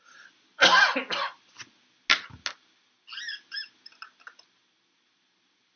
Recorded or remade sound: recorded